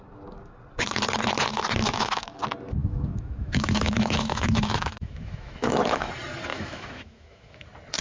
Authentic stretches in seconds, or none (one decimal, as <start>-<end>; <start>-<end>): 0.0-1.8; 2.4-2.8; 6.1-6.5; 7.6-8.0